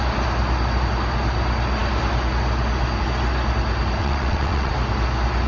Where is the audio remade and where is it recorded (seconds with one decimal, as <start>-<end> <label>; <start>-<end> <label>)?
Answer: 0.0-4.0 recorded; 4.0-4.7 remade; 4.7-5.5 recorded